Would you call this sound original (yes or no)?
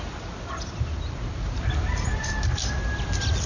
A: yes